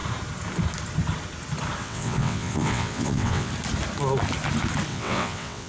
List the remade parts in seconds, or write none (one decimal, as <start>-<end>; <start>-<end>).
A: 1.8-3.5; 4.9-5.7